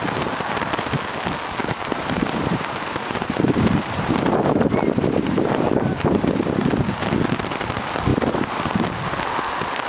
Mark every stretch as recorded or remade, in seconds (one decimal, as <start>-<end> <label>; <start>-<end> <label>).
0.0-1.6 recorded; 1.6-6.7 remade; 6.7-8.1 recorded; 8.1-9.2 remade; 9.2-9.9 recorded